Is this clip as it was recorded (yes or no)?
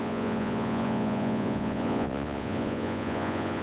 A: no